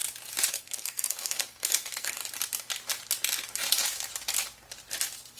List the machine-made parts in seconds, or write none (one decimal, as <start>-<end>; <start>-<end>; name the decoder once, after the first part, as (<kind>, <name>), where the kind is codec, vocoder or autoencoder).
0.5-2.2 (codec, SNAC)

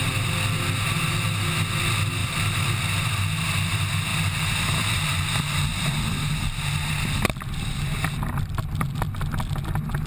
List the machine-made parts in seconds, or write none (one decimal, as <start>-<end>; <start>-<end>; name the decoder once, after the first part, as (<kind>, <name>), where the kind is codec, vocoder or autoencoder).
2.2-3.0 (vocoder, BigVGAN v2); 4.1-9.3

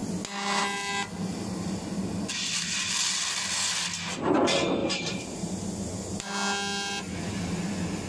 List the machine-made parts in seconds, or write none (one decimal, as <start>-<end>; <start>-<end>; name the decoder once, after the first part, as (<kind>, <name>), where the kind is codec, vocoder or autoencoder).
4.8-5.6 (vocoder, BigVGAN v2)

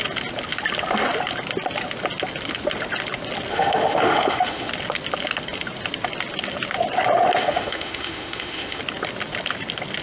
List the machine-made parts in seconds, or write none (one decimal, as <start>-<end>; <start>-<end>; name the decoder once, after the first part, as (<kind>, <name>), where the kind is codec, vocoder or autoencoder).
3.5-4.7 (autoencoder, DAC-VAE); 7.4-8.8

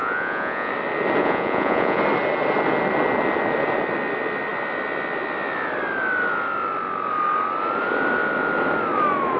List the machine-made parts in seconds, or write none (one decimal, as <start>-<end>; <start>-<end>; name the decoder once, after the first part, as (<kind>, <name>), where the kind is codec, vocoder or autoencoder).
0.0-0.7 (vocoder, Vocos); 1.2-2.0